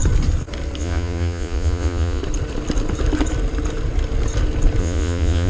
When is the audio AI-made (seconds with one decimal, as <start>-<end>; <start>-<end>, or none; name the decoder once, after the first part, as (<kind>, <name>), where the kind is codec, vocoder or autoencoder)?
0.8-2.2 (vocoder, Vocos); 4.8-5.5